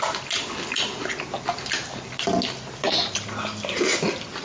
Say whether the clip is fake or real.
real